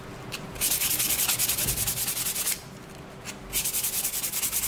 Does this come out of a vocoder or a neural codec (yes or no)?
no